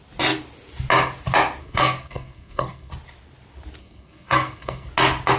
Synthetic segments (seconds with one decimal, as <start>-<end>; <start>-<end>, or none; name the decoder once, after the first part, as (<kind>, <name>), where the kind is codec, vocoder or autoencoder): 1.6-2.9 (codec, SNAC); 3.8-4.9